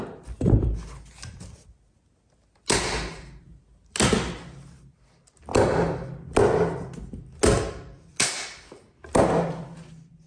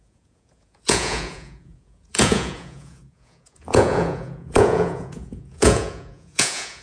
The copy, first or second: second